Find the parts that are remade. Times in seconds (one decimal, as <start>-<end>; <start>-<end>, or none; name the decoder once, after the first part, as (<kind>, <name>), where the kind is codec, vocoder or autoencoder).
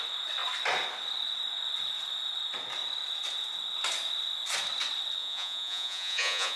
5.2-6.6 (vocoder, Vocos)